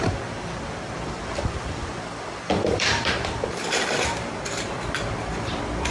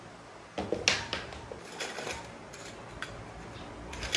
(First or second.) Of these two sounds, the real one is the second